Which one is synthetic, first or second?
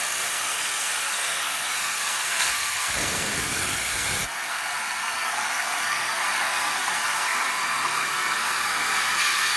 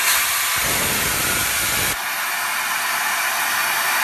first